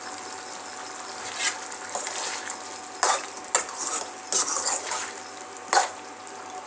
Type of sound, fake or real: real